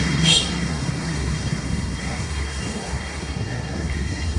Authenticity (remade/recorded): remade